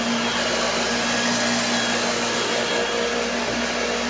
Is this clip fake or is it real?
real